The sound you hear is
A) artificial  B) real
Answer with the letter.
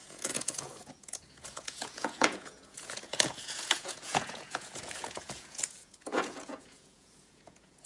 A